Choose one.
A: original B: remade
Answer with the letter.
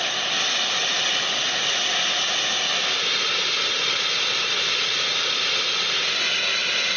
A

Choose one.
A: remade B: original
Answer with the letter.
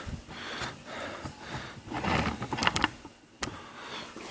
B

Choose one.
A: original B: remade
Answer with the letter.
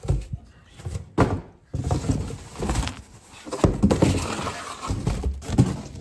A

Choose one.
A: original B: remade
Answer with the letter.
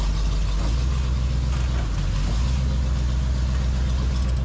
A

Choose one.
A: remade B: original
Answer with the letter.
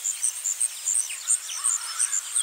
B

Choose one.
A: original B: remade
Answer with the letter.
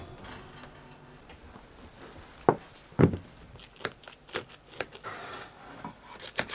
A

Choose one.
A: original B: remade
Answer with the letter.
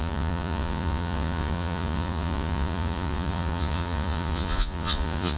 B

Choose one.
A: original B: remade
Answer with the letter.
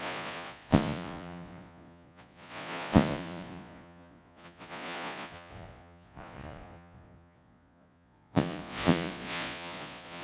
B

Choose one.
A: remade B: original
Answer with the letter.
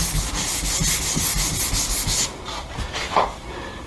B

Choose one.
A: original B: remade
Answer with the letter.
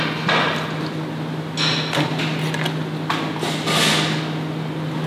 A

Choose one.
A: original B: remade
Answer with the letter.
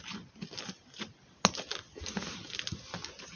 A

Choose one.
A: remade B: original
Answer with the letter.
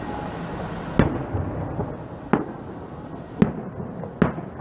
B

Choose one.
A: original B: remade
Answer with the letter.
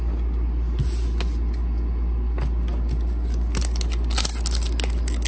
A